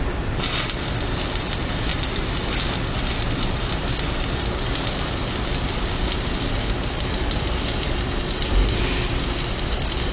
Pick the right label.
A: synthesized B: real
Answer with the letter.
B